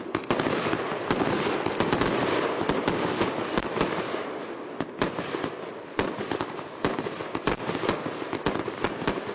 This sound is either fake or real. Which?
real